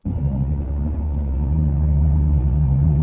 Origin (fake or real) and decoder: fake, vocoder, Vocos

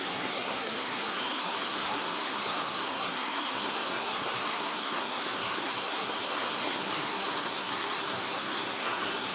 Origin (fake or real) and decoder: fake, codec, SNAC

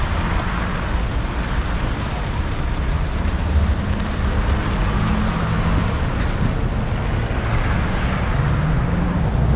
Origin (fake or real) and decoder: real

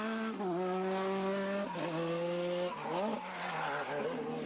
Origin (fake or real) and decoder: real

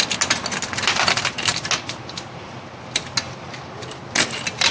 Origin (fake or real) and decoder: real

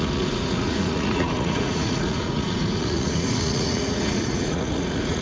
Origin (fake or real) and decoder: fake, vocoder, Vocos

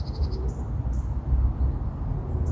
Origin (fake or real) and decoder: real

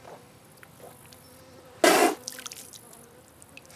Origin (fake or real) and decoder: real